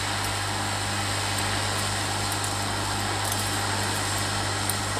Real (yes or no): yes